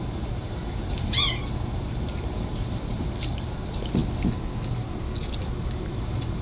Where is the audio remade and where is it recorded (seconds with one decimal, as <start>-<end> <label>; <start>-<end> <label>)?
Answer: 0.0-4.0 remade; 4.0-5.6 recorded; 5.6-6.4 remade